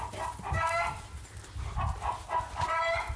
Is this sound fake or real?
real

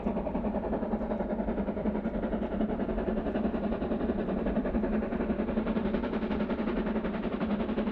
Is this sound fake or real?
fake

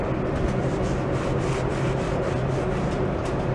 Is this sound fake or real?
real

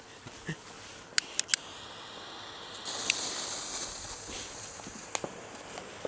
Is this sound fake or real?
real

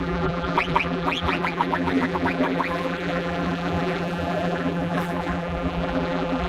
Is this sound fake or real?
fake